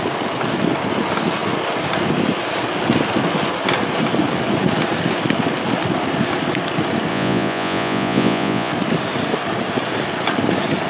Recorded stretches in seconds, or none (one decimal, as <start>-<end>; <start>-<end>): 0.0-7.1; 8.7-10.9